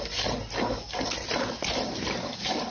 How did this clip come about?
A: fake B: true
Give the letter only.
B